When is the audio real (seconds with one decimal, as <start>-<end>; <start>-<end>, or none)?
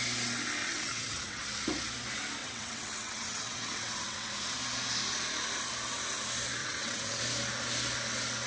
0.0-0.6; 1.4-2.4; 4.3-6.6; 7.2-8.5